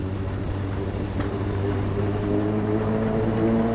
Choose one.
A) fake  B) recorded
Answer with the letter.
B